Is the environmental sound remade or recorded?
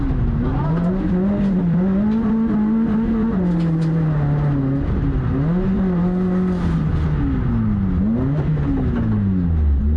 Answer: recorded